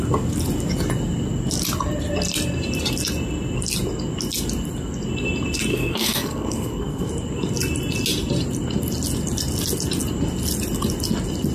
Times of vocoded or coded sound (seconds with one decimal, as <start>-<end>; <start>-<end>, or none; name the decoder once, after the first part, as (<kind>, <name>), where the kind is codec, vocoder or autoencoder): 5.7-7.1 (codec, SNAC)